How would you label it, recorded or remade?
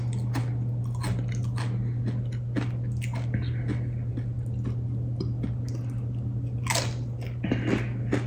recorded